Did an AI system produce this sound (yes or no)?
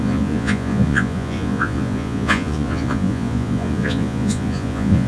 yes